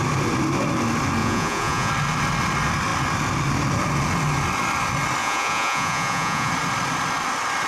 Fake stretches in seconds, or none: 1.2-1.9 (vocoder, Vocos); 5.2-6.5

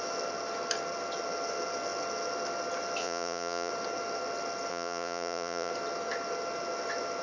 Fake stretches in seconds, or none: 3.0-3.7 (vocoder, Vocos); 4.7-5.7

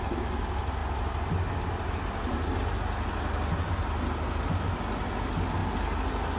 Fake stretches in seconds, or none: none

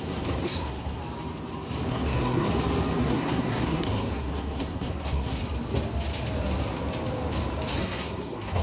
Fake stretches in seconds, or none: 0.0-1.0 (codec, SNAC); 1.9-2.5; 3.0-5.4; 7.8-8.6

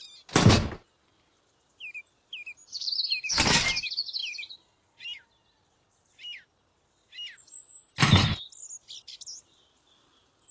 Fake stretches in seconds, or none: none